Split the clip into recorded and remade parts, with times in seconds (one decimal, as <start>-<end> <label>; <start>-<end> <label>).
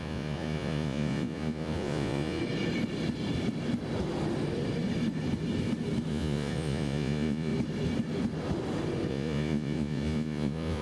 0.0-2.4 remade; 2.4-6.1 recorded; 6.1-7.5 remade; 7.5-9.1 recorded; 9.1-10.8 remade